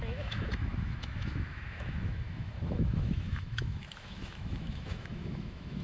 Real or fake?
fake